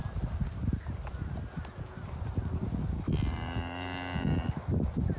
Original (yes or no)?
yes